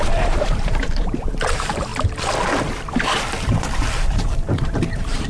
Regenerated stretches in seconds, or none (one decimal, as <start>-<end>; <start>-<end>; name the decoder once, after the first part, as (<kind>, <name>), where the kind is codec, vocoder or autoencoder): 0.0-1.9 (vocoder, BigVGAN v2); 2.6-5.3